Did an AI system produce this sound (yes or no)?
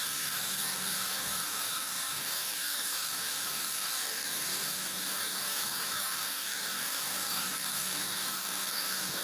yes